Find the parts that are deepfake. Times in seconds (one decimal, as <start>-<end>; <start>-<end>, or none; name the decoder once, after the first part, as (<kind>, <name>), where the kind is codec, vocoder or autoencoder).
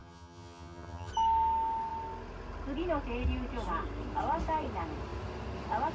0.0-1.1 (vocoder, HiFi-GAN)